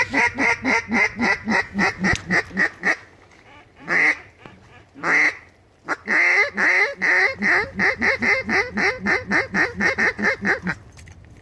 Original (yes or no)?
yes